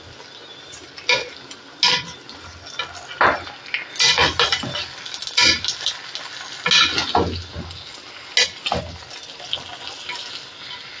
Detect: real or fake real